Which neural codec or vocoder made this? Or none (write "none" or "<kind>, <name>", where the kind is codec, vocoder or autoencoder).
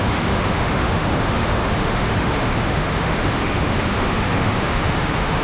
autoencoder, DAC-VAE